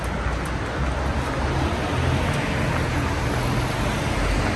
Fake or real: real